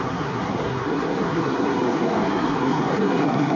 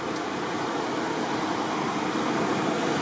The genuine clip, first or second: second